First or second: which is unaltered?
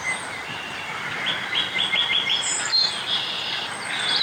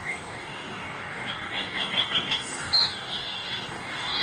first